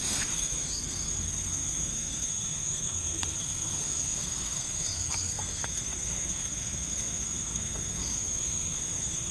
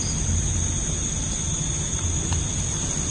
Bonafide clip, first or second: second